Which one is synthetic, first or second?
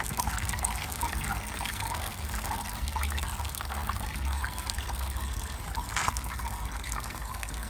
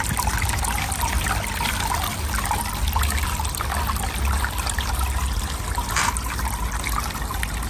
first